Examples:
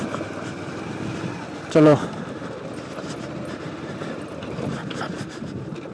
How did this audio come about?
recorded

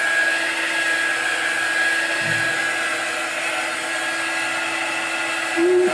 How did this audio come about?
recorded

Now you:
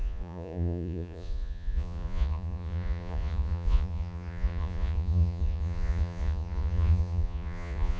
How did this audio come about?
remade